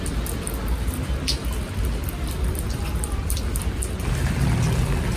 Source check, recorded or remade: recorded